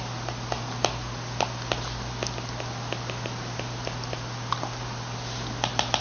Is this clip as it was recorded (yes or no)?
yes